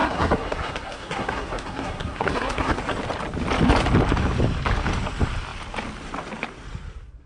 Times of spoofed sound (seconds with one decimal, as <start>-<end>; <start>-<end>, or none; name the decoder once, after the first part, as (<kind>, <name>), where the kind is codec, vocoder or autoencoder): 0.0-2.8 (codec, SNAC)